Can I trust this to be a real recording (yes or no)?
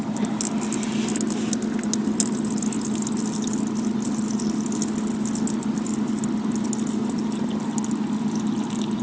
yes